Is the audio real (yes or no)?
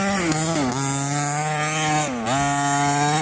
yes